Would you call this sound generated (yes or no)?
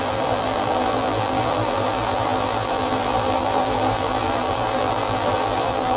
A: yes